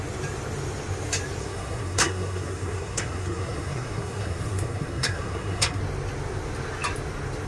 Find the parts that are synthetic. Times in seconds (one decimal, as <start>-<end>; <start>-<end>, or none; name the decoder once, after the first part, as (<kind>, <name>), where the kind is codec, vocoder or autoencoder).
1.4-5.8 (codec, SNAC)